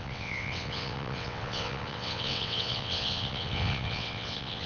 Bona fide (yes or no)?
no